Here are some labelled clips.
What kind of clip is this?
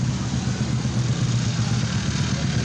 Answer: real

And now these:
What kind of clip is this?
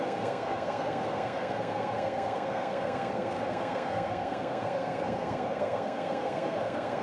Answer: fake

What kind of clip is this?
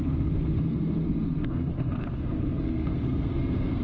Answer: fake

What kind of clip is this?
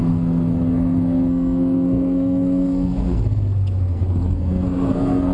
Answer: fake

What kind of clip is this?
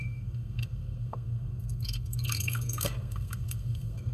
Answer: fake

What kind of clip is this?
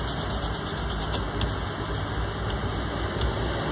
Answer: real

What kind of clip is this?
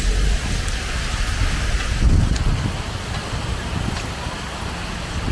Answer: real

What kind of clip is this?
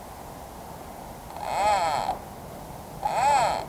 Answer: real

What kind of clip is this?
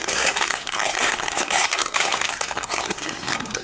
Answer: fake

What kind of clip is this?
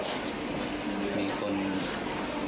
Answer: real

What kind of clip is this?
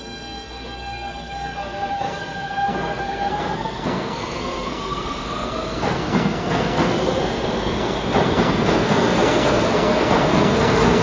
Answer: fake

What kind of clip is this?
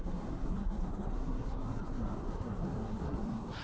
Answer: fake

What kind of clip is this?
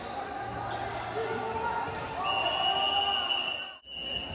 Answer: real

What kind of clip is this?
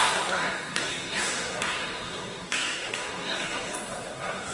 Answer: fake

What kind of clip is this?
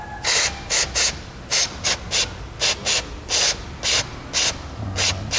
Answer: real